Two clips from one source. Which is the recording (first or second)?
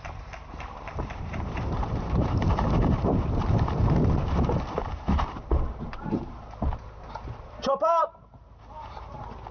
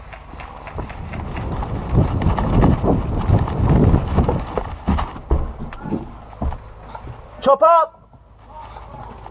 second